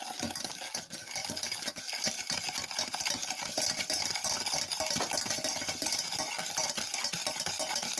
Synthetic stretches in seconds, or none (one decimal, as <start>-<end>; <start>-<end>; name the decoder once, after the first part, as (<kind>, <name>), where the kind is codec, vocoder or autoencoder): 1.2-1.8 (vocoder, BigVGAN v2); 7.2-8.0